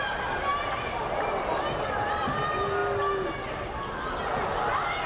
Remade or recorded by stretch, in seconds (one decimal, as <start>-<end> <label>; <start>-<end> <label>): 0.0-5.1 recorded